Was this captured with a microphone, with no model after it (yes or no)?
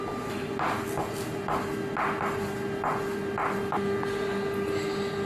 yes